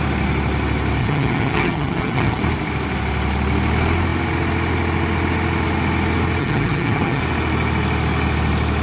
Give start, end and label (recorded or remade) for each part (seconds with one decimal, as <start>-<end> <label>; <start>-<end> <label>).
0.0-1.0 recorded; 1.0-2.4 remade; 2.4-6.4 recorded; 6.4-7.2 remade; 7.2-8.8 recorded